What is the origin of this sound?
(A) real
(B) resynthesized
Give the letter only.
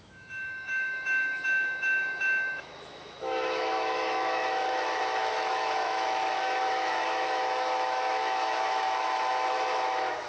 B